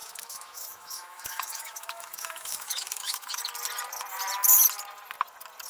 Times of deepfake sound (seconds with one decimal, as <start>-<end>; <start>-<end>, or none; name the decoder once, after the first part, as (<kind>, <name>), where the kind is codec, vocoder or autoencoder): 0.0-3.4 (autoencoder, DAC-VAE)